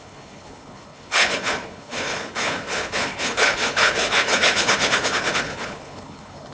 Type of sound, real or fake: fake